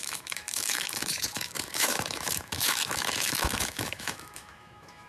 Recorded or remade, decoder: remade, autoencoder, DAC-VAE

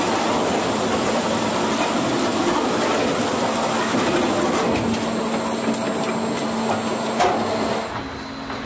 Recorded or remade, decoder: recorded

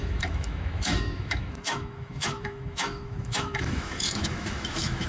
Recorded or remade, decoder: remade, autoencoder, DAC-VAE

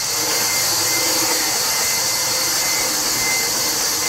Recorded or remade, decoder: recorded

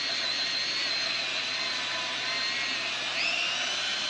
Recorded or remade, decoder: recorded